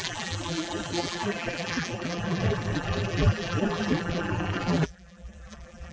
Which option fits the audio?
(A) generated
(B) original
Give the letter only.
A